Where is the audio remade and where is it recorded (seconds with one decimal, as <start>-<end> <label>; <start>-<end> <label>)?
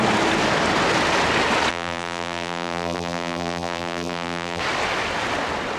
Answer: 0.0-1.7 recorded; 1.7-4.6 remade; 4.6-5.8 recorded